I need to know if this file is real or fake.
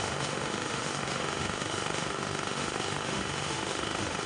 fake